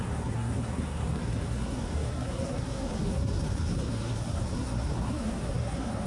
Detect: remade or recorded remade